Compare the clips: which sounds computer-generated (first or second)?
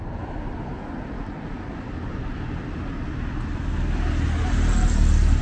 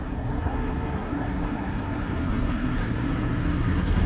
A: second